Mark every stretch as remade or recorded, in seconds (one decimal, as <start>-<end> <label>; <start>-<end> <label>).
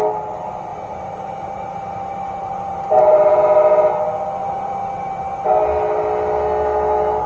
0.0-0.7 recorded; 0.7-3.6 remade; 3.6-4.4 recorded; 4.4-5.5 remade; 5.5-7.3 recorded